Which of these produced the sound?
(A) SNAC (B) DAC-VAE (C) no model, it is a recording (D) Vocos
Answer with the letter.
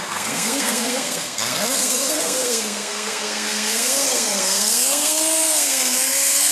A